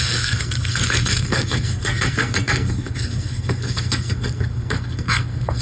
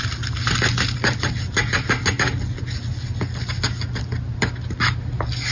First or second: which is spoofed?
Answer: first